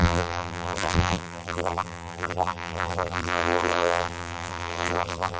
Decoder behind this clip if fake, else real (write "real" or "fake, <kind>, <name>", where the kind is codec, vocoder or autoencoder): fake, vocoder, BigVGAN v2